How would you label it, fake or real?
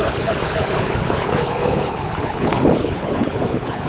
fake